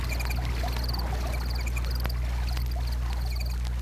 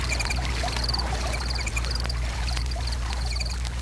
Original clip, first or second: first